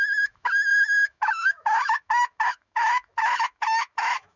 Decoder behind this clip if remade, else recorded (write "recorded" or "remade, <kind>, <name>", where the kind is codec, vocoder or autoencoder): remade, autoencoder, DAC-VAE